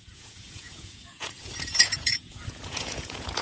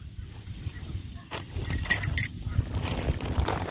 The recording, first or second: second